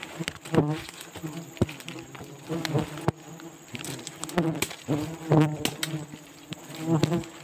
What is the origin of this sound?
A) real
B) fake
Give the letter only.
A